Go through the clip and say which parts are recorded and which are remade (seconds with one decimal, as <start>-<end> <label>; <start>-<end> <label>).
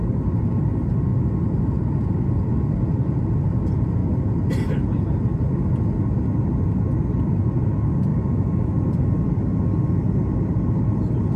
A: 0.0-8.1 recorded; 8.1-8.7 remade; 8.7-11.4 recorded